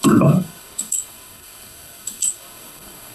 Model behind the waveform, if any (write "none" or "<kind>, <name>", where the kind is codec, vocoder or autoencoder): codec, SNAC